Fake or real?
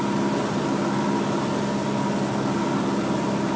real